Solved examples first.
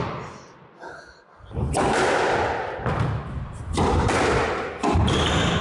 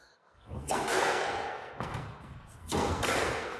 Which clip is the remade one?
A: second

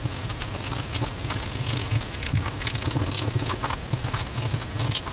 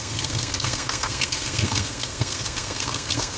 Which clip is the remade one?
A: second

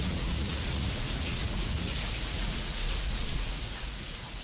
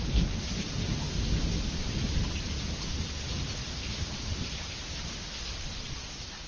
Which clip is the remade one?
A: first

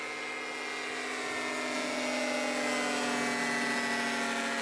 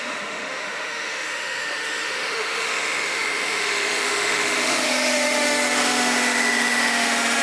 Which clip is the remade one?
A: second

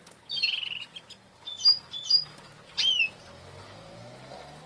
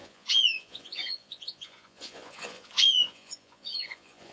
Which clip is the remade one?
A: second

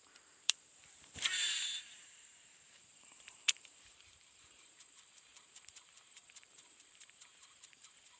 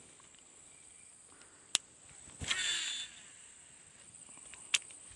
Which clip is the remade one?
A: first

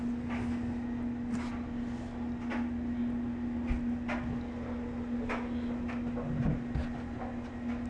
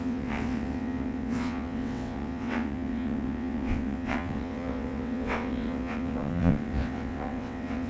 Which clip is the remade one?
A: second